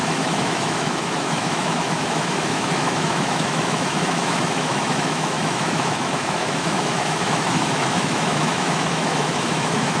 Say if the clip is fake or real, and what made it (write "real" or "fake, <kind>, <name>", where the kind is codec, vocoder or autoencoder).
fake, autoencoder, DAC-VAE